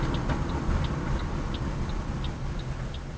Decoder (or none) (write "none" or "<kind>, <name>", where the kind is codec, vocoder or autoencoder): none